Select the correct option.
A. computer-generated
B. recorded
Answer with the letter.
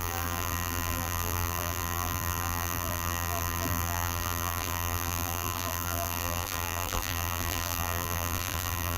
A